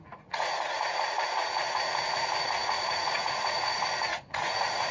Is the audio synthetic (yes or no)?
yes